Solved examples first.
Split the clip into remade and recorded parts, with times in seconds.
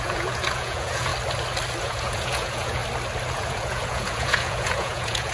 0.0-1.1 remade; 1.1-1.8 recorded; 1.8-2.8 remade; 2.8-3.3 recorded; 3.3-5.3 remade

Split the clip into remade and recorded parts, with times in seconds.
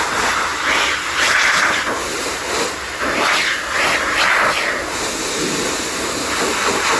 0.0-7.0 recorded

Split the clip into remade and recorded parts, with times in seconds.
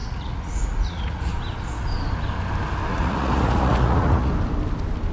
0.0-1.3 remade; 1.3-2.9 recorded; 2.9-4.3 remade; 4.3-5.1 recorded